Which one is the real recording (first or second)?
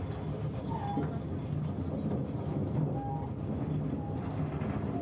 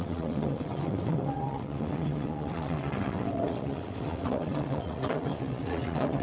first